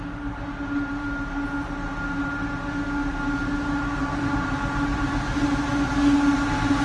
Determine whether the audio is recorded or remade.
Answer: recorded